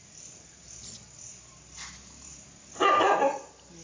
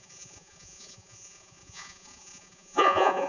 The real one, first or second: first